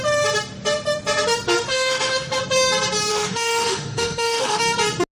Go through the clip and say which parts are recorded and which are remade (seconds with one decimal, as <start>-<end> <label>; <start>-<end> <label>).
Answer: 0.0-1.7 recorded; 1.7-2.4 remade; 2.4-3.1 recorded; 3.1-4.6 remade; 4.6-5.2 recorded